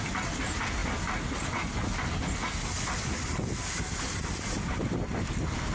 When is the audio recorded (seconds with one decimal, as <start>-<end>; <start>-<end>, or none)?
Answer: 0.0-5.7